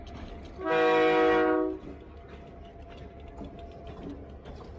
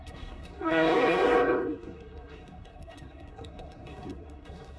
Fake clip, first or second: second